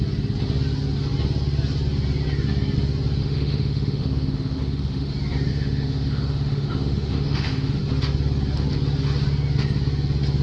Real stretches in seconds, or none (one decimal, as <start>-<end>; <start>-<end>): 0.0-3.2; 5.1-5.5; 7.8-10.4

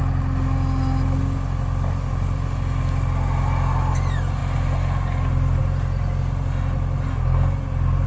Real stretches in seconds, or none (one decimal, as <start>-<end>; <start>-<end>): 0.0-8.1

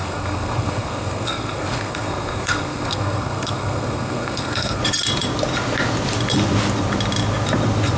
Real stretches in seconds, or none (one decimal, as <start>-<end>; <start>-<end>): 4.8-8.0

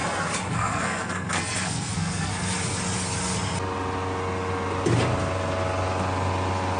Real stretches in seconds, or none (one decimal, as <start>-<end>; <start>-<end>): 0.0-0.5; 2.3-6.8

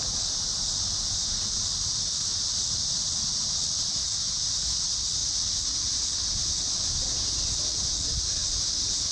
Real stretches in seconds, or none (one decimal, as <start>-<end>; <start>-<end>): 0.0-9.1

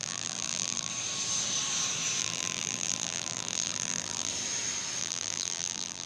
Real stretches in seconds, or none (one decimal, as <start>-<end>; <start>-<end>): 0.9-2.2; 4.3-5.0

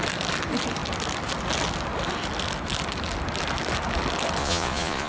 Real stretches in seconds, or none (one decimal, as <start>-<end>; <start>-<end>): 0.0-4.4

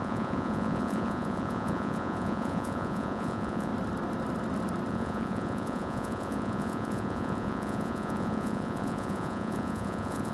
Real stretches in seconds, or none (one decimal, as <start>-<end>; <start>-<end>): 3.7-4.9